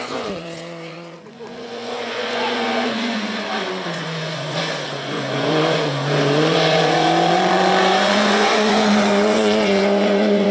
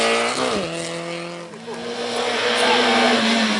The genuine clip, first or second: second